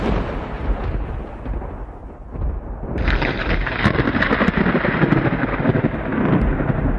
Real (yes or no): yes